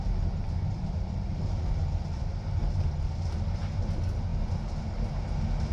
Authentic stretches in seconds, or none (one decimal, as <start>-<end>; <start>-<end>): 0.0-0.4; 2.3-4.3; 5.3-5.7